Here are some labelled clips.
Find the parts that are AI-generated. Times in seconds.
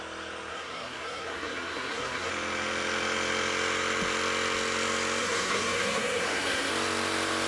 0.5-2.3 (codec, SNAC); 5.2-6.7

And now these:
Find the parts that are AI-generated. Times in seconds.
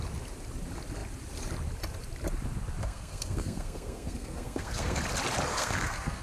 2.8-5.0 (codec, SNAC); 5.5-6.2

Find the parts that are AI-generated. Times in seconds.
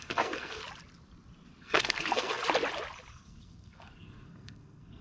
0.0-0.6 (codec, SNAC); 1.6-2.4; 3.1-5.0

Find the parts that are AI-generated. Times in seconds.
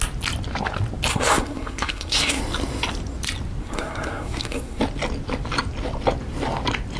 1.1-2.4 (codec, SNAC); 3.6-4.8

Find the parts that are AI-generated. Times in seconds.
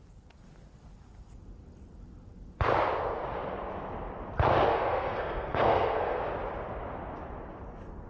4.7-6.2 (codec, SNAC)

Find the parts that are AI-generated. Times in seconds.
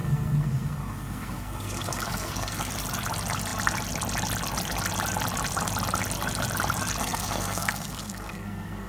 0.0-2.7 (codec, SNAC); 7.0-8.9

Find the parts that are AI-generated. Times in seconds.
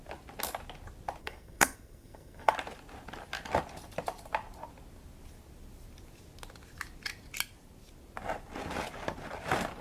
1.2-2.5 (codec, SNAC)